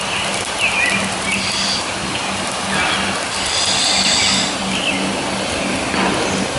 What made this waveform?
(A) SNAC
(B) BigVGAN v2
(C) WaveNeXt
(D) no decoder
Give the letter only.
D